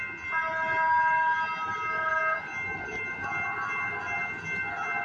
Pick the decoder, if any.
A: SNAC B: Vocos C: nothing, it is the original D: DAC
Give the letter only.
C